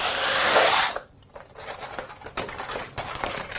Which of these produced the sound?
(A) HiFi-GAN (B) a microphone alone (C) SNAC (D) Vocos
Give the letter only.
B